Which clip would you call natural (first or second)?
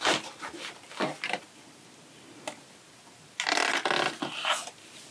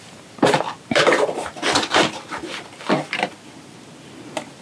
first